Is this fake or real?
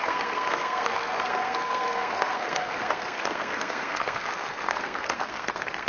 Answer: fake